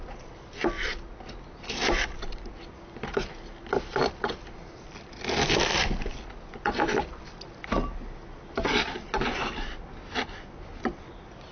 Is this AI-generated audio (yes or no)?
no